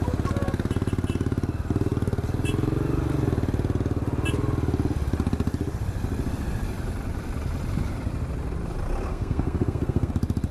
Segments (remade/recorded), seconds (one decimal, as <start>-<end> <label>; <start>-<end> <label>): 0.0-9.1 recorded; 9.1-10.1 remade; 10.1-10.5 recorded